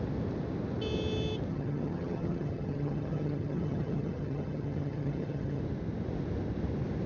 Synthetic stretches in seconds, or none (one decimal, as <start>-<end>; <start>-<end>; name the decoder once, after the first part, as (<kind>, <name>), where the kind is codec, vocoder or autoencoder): 1.5-5.6 (vocoder, HiFi-GAN)